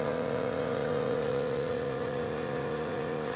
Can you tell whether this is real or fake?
fake